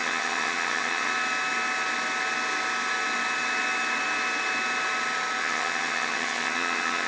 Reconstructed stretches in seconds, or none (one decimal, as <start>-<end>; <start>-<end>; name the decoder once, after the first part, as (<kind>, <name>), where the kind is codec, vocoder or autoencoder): 0.0-1.1 (vocoder, HiFi-GAN); 5.4-7.1